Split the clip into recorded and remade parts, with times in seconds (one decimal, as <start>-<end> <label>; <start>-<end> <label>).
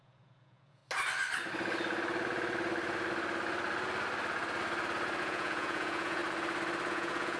0.0-0.8 remade; 0.8-5.2 recorded; 5.2-6.2 remade; 6.2-6.9 recorded; 6.9-7.4 remade